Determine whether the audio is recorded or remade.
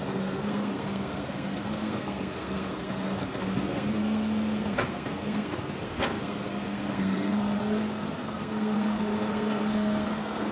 remade